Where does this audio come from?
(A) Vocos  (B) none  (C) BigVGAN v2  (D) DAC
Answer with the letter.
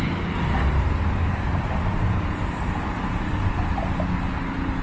B